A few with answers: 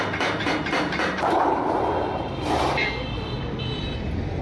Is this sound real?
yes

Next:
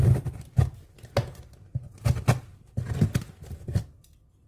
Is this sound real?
yes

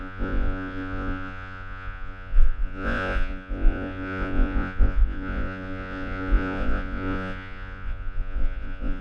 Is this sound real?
no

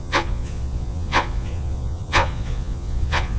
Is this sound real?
no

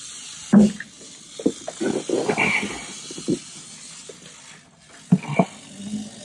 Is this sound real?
yes